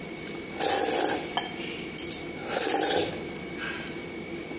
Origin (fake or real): fake